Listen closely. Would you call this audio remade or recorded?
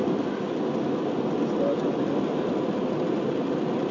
recorded